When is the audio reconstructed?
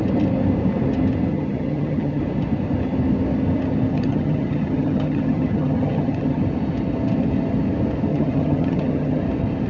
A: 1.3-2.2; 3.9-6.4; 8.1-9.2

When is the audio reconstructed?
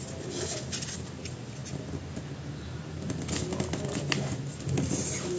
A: none